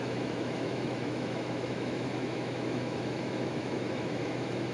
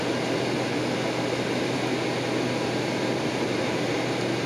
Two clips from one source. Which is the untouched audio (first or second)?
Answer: second